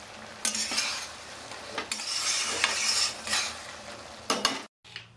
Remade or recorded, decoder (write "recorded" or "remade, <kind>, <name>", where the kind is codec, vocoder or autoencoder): recorded